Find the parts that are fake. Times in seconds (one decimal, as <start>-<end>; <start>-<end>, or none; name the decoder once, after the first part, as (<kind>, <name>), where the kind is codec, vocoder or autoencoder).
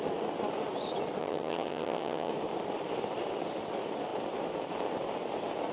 1.2-2.3 (vocoder, HiFi-GAN)